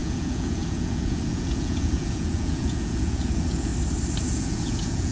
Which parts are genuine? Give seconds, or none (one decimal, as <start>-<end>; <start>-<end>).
3.7-4.2